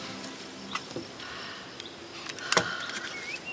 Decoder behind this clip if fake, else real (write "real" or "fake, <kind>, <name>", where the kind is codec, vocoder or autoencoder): real